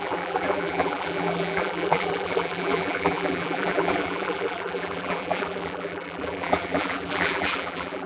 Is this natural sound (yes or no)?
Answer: no